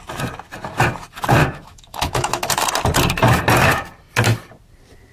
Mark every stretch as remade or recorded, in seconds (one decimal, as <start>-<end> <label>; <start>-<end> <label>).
0.0-1.4 recorded; 1.4-2.5 remade; 2.5-5.1 recorded